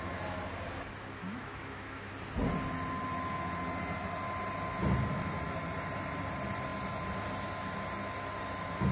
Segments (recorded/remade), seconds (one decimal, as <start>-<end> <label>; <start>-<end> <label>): 0.0-1.2 recorded; 1.2-2.1 remade; 2.1-8.9 recorded